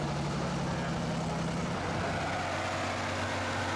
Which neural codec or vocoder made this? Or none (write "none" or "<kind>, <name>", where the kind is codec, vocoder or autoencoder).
none